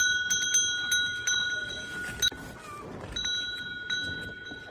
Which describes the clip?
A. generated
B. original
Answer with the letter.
B